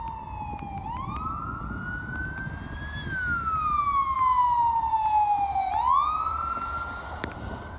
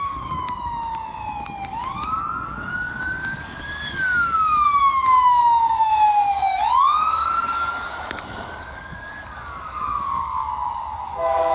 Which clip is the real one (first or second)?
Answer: first